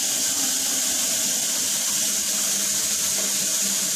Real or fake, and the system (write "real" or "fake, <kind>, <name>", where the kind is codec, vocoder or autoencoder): real